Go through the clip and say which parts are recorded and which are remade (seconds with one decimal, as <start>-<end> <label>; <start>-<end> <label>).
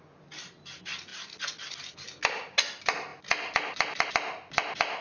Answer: 0.0-5.0 recorded